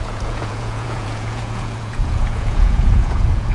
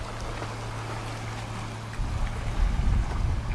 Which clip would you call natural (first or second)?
second